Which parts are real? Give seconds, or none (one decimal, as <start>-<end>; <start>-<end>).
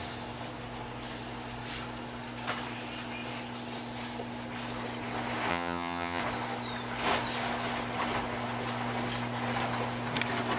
0.0-5.5; 6.2-10.6